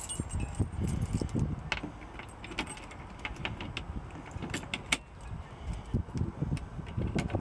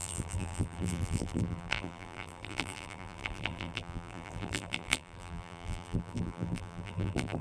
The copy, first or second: second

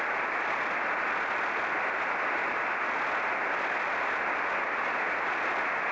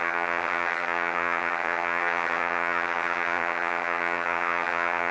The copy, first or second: second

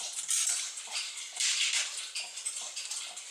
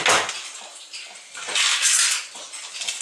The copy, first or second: first